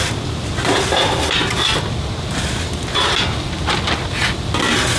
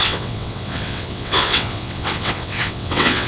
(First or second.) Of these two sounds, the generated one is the second